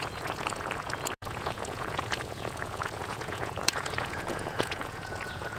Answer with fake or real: fake